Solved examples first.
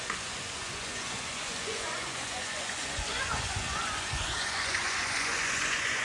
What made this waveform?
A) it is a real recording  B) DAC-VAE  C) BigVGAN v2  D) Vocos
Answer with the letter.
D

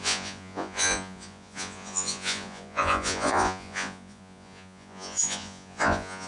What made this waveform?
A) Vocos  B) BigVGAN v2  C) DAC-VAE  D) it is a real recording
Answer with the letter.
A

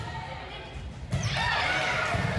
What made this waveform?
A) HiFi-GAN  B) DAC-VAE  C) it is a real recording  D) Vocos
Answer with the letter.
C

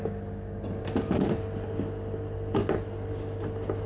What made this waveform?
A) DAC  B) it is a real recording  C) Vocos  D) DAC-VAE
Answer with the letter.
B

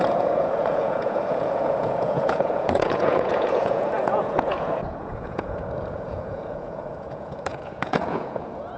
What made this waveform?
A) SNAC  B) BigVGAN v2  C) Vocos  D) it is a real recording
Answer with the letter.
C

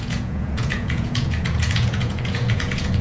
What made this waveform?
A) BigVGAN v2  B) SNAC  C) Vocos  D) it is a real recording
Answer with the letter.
C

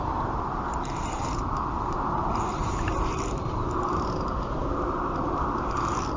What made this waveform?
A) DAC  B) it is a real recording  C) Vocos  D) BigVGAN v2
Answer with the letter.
B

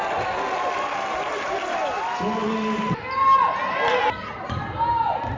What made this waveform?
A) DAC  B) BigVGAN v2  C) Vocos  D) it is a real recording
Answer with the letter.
D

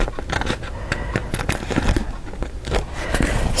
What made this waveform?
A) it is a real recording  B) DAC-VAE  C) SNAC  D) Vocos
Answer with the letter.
A